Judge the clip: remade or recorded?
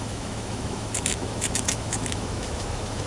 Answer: remade